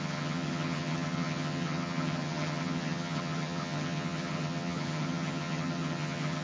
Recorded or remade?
remade